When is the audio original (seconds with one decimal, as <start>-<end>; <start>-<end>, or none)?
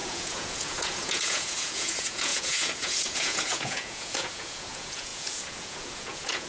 none